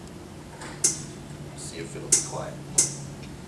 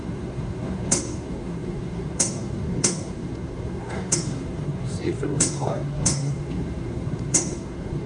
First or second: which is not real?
second